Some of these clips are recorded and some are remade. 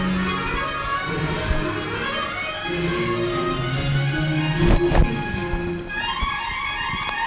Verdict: recorded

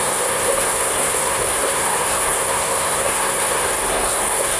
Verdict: remade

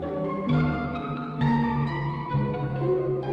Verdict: remade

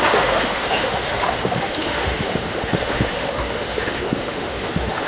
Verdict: remade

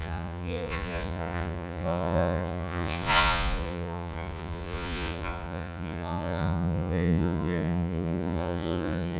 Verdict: remade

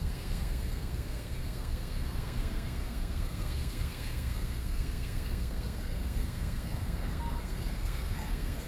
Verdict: remade